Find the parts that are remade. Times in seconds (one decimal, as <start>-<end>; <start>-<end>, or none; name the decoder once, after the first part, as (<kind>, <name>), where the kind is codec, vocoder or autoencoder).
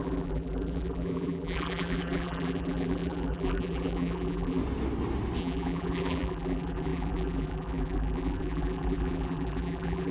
0.0-4.6 (vocoder, BigVGAN v2); 5.4-10.1